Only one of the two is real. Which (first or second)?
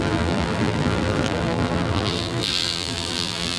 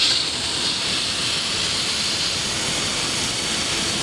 second